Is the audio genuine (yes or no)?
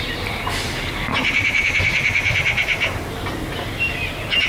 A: yes